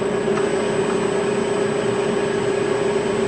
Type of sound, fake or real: real